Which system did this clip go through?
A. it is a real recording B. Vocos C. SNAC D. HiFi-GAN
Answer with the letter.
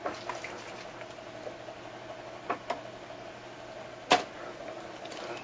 A